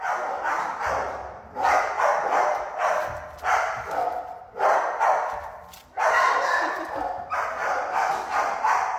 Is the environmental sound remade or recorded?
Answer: remade